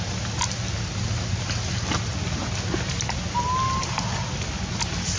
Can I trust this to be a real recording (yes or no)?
yes